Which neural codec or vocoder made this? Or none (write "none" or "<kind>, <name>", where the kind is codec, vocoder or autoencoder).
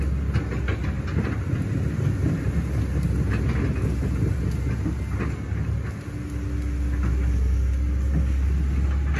none